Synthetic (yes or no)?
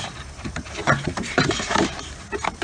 yes